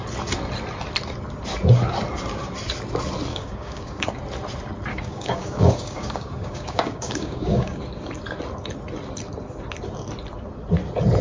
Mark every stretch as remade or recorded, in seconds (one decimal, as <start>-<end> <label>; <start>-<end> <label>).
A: 0.0-3.3 recorded; 3.3-4.2 remade; 4.2-4.9 recorded; 4.9-7.8 remade; 7.8-11.2 recorded